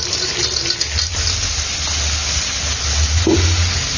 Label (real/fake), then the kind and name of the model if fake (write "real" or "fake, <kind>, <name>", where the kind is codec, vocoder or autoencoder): real